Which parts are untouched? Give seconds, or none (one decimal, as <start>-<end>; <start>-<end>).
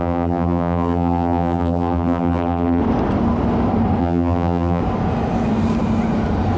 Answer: 2.8-4.0; 4.8-6.6